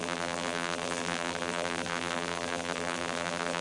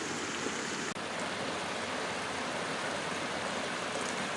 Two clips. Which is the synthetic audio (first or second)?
first